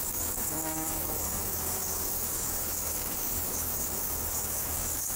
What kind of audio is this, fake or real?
fake